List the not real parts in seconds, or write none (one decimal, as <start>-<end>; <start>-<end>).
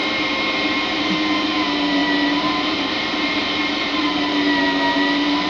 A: 0.0-1.1; 2.0-4.6